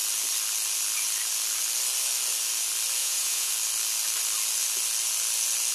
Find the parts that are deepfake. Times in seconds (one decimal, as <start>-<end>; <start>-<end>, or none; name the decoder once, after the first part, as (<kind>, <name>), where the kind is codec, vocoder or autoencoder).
3.0-3.5 (vocoder, Vocos)